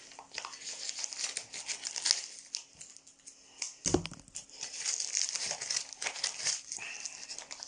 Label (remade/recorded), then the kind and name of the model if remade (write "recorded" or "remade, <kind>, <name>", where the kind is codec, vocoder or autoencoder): recorded